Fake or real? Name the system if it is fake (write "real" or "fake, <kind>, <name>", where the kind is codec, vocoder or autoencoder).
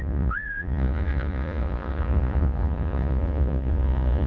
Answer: fake, vocoder, Vocos